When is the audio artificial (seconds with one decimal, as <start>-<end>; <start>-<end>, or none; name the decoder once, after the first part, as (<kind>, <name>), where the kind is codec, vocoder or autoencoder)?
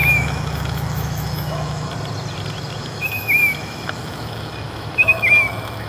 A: 0.0-1.9 (autoencoder, DAC-VAE); 2.8-5.9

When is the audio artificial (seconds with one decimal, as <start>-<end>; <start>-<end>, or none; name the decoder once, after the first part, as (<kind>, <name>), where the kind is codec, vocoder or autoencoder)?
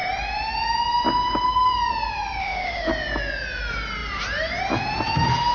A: 2.4-2.9 (autoencoder, DAC-VAE)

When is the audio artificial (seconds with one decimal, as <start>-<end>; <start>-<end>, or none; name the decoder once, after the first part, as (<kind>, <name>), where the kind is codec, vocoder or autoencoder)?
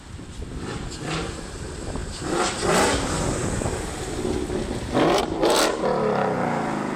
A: none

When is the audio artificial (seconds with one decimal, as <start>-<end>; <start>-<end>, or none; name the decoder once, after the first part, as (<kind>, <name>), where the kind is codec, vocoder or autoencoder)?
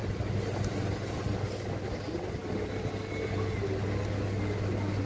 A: none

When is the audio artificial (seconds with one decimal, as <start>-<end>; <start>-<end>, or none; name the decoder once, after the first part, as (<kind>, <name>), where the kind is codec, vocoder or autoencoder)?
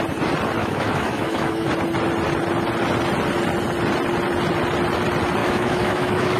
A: 0.6-1.7 (autoencoder, DAC-VAE); 5.4-6.4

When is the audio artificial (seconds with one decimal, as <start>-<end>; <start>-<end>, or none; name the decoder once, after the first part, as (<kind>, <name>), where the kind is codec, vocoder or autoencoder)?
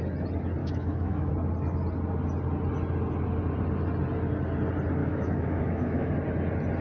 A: 0.6-1.3 (autoencoder, DAC-VAE); 5.0-6.1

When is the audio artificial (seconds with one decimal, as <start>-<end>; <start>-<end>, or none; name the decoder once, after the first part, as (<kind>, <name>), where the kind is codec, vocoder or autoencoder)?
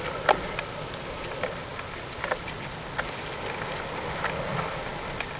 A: none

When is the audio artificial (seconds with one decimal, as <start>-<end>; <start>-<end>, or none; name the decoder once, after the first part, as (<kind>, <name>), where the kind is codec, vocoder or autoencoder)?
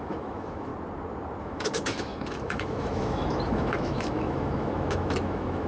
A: 0.0-0.7 (autoencoder, DAC-VAE); 1.4-5.7